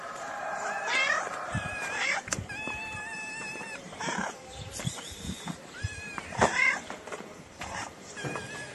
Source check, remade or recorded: remade